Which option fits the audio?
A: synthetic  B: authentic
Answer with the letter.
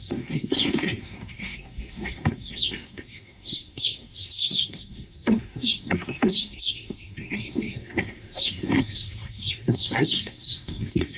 A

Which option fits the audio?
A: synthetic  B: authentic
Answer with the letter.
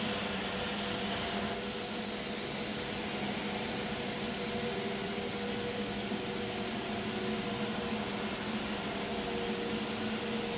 B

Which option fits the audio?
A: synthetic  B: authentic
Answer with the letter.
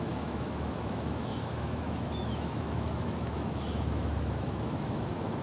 A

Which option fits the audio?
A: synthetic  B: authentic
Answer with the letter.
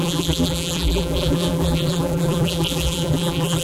A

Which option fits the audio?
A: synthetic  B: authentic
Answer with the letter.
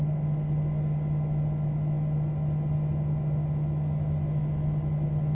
B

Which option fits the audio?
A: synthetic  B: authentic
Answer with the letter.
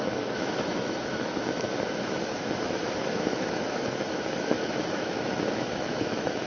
A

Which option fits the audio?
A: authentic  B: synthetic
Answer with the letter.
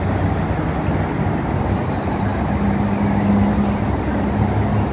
A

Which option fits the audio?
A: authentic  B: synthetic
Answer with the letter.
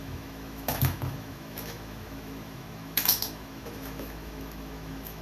B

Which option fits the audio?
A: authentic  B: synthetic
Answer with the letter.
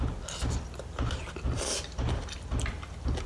A